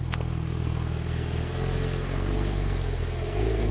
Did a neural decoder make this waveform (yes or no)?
yes